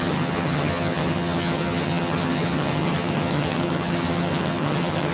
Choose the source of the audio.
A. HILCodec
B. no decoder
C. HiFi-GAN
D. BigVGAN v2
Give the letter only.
C